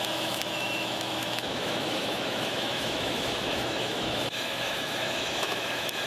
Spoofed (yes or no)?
yes